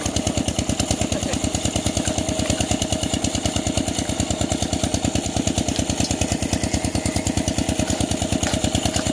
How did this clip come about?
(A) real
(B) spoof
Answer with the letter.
A